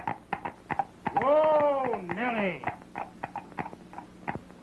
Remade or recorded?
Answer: recorded